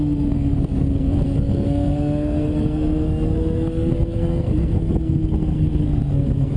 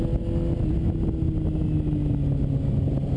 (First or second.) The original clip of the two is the second